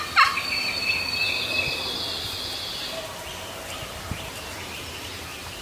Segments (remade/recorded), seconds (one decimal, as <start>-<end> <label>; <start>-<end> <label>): 0.0-5.6 recorded